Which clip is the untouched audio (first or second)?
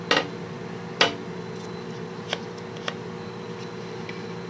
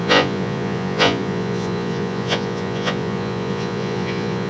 first